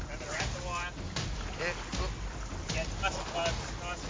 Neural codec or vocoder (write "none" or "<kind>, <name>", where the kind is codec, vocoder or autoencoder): none